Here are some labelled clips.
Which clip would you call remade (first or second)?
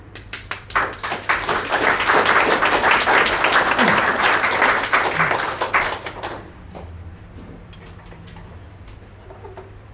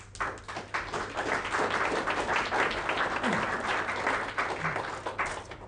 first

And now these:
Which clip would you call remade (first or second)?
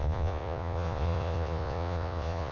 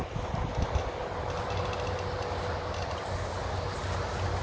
first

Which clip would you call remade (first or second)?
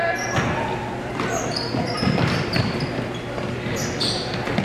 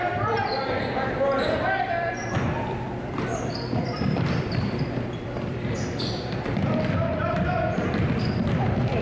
second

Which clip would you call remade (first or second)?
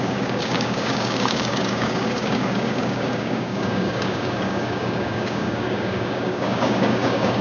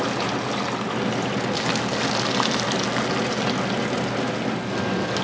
first